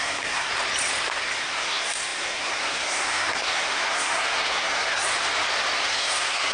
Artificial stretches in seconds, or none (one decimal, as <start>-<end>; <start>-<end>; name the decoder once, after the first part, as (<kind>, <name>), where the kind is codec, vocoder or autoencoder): 0.0-0.5 (codec, SNAC); 1.4-5.1; 5.9-6.5